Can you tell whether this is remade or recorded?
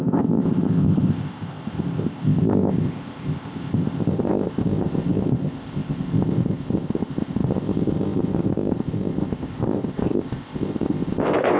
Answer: remade